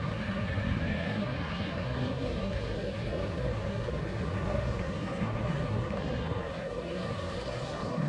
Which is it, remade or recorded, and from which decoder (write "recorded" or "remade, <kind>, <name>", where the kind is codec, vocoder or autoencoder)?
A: remade, codec, SNAC